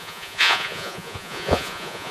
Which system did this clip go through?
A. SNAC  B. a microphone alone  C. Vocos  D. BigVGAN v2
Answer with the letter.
C